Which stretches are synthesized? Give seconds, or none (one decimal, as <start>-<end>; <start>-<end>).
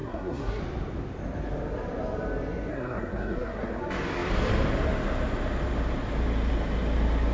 0.0-0.6; 2.7-3.8